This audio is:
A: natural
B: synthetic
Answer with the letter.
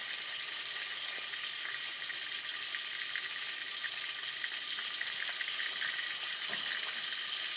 A